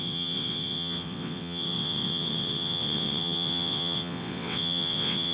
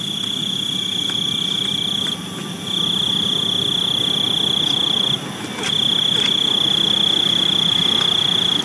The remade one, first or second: first